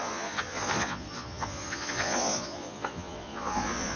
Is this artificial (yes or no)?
yes